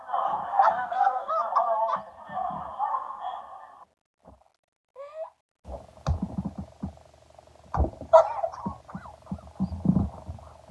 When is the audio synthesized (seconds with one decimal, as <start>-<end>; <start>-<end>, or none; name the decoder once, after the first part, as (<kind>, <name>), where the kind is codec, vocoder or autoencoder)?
0.5-1.3 (codec, SNAC); 2.9-3.4